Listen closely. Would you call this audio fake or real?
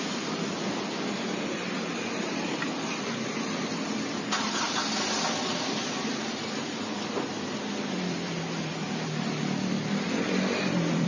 fake